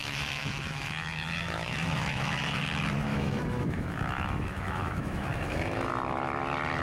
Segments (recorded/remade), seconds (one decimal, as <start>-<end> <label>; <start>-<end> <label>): 0.0-2.6 remade; 2.6-3.1 recorded; 3.1-5.9 remade; 5.9-6.8 recorded